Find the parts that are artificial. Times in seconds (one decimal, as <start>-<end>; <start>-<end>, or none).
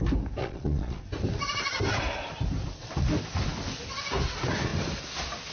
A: 0.4-1.0